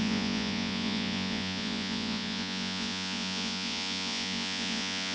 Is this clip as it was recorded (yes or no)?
no